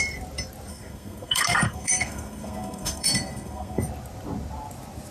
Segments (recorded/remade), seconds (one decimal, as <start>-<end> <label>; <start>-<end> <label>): 0.0-0.7 recorded; 0.7-3.8 remade; 3.8-5.1 recorded